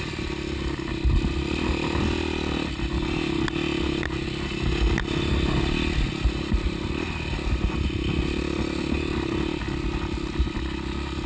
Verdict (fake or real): real